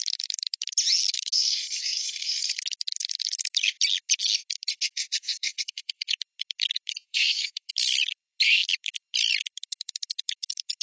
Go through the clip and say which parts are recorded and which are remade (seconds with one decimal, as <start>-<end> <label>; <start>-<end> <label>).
0.0-1.3 recorded; 1.3-2.5 remade; 2.5-4.7 recorded; 4.7-6.1 remade; 6.1-6.9 recorded; 6.9-7.7 remade; 7.7-10.8 recorded